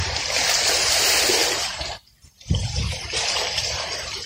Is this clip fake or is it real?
fake